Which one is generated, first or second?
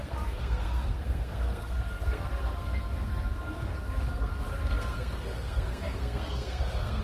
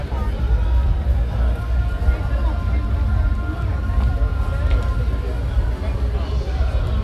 first